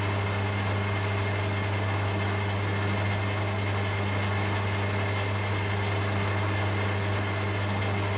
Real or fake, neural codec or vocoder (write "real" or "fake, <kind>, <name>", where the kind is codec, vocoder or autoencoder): real